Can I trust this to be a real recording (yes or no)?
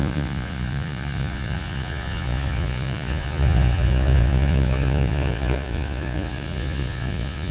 no